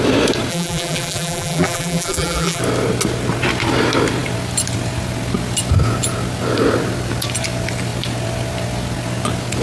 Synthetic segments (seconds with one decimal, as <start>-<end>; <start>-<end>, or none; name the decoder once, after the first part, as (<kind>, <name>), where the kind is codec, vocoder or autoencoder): 0.5-2.6 (vocoder, BigVGAN v2)

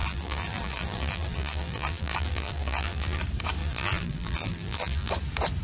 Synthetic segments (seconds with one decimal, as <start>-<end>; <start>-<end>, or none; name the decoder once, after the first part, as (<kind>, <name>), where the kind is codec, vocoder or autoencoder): 0.0-3.2 (vocoder, BigVGAN v2); 3.6-5.1

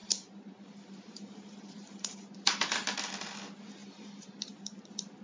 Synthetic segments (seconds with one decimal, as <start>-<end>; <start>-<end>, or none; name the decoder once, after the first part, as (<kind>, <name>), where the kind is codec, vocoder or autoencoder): 0.0-3.1 (vocoder, BigVGAN v2); 3.8-4.8

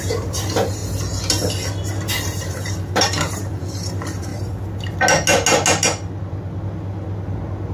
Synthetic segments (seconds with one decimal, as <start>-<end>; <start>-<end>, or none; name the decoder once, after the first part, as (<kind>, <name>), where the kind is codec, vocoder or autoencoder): 0.0-0.8 (vocoder, BigVGAN v2); 2.2-4.3

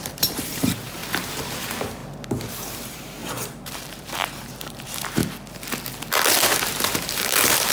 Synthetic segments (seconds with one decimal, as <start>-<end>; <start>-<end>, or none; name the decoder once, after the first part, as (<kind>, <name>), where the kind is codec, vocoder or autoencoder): 0.0-1.0 (vocoder, BigVGAN v2); 1.6-2.0; 2.5-5.2; 7.0-7.7

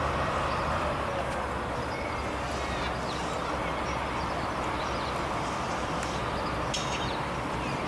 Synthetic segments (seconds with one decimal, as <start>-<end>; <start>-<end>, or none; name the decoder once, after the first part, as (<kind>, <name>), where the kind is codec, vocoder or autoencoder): 0.0-1.1 (vocoder, BigVGAN v2); 5.1-6.2; 7.2-7.9

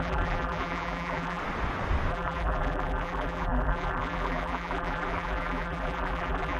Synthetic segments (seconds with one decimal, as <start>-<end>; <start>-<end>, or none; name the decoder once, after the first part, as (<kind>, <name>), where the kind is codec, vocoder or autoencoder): 0.0-1.4 (vocoder, BigVGAN v2); 2.1-6.6

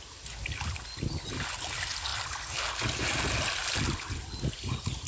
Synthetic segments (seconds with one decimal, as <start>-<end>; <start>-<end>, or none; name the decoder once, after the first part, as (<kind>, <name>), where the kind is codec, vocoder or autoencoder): 3.6-4.2 (vocoder, BigVGAN v2)